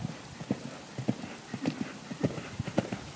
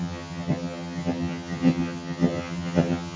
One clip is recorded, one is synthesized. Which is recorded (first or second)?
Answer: first